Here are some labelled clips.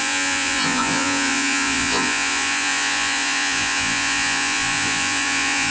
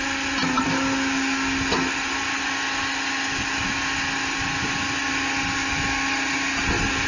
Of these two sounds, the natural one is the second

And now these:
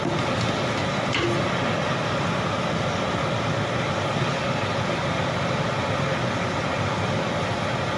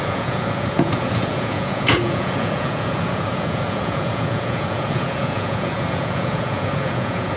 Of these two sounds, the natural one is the first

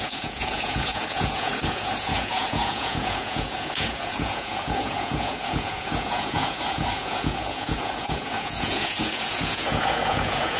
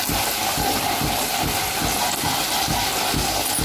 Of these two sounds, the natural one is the second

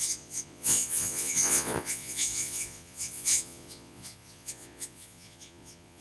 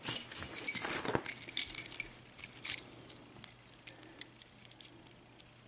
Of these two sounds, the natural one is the second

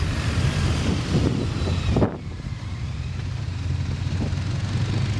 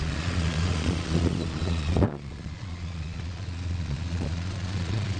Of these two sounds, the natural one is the first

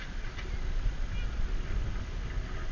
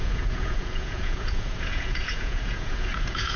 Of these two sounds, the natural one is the first